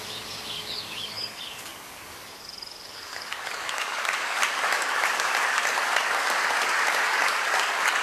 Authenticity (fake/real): fake